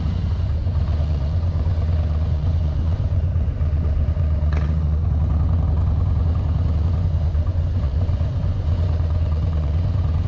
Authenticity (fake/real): fake